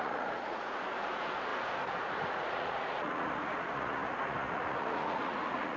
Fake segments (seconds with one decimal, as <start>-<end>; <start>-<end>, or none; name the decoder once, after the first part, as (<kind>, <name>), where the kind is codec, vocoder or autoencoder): 0.0-5.8 (vocoder, Vocos)